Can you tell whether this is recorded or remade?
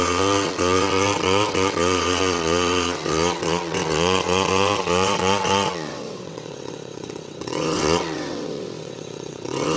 remade